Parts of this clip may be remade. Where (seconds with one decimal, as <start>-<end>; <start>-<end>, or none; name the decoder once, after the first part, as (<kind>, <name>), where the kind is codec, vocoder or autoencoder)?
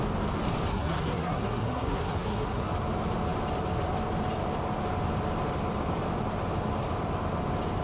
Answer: 0.7-2.7 (codec, SNAC)